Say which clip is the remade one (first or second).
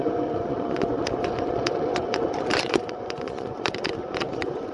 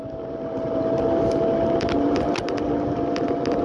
first